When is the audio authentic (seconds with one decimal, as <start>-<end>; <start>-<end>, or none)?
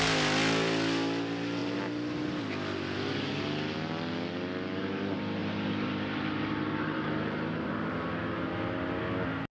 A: 0.0-5.4; 7.7-9.5